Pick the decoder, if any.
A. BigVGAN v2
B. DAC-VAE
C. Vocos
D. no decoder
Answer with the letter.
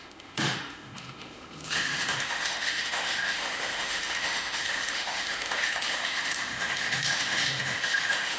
B